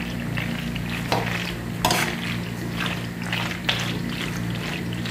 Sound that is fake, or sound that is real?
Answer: real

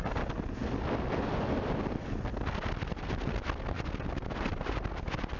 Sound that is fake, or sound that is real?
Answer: real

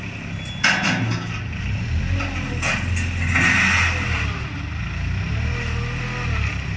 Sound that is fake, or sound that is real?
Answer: real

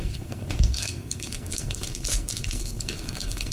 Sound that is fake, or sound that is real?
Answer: fake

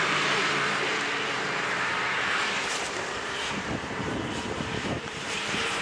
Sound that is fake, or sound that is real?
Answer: fake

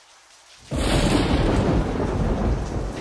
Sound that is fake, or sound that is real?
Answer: real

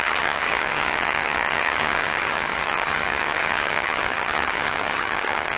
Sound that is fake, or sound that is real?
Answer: fake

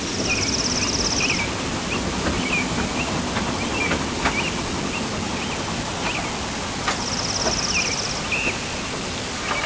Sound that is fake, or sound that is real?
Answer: real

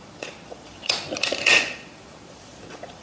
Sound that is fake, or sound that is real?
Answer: fake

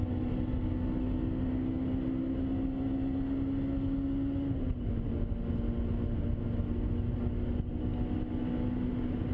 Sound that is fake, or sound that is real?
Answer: real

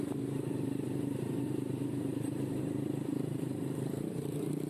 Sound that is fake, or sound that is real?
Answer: fake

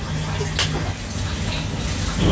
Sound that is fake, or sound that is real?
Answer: real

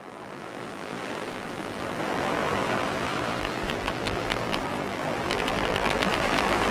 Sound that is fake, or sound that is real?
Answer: fake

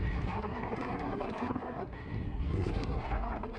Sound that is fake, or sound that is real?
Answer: fake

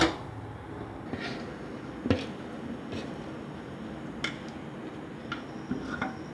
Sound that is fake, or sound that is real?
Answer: real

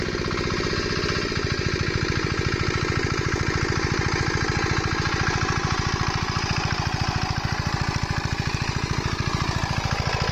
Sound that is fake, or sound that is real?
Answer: real